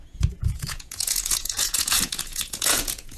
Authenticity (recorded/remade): remade